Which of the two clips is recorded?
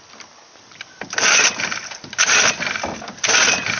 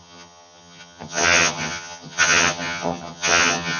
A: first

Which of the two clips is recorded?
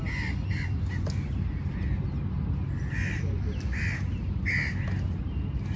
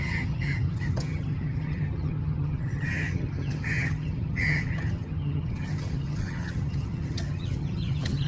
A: first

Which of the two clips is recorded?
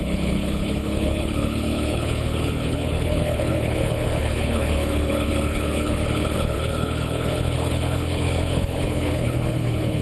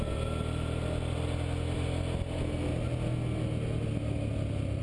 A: second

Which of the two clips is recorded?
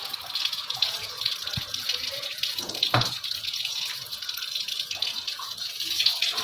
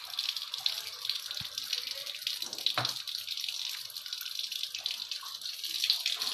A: second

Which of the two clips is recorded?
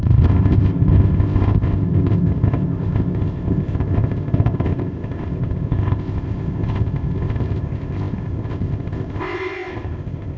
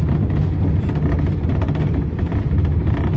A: second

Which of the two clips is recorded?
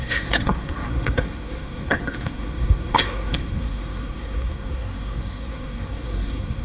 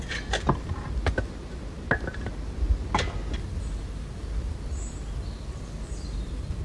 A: second